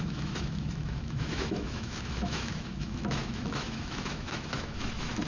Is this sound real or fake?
fake